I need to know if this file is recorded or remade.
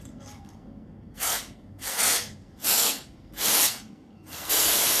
remade